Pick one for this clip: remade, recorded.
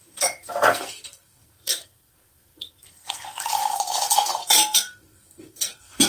remade